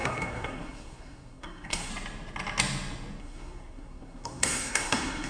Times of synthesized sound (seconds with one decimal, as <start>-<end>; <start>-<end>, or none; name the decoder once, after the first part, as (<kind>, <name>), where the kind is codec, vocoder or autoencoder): 0.0-1.9 (codec, SNAC); 3.2-5.3